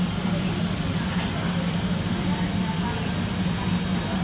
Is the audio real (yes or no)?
yes